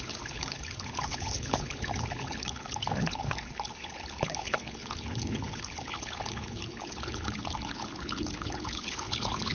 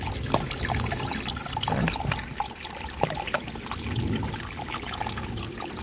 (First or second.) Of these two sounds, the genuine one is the second